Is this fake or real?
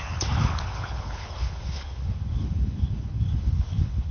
fake